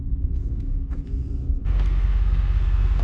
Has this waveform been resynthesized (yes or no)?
yes